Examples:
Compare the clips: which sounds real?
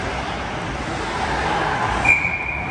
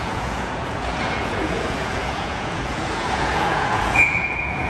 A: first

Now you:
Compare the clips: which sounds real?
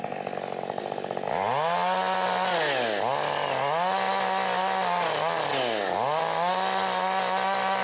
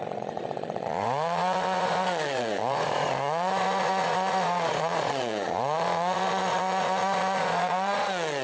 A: first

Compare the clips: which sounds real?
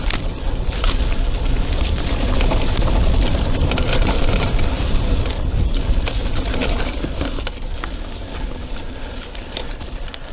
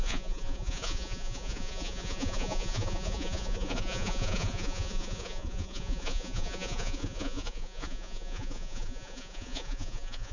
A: first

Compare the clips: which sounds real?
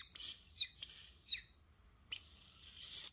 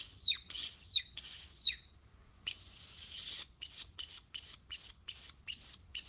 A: first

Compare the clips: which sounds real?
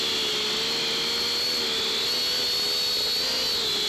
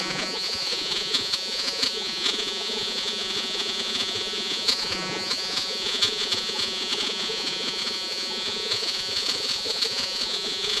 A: first